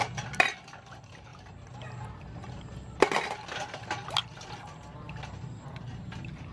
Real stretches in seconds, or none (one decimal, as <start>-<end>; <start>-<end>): 0.0-6.5